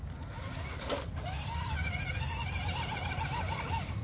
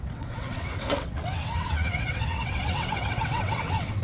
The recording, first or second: first